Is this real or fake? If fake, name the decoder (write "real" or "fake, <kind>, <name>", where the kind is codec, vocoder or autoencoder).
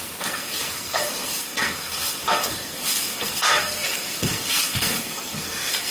fake, codec, SNAC